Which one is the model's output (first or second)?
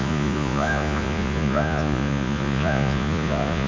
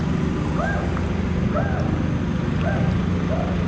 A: first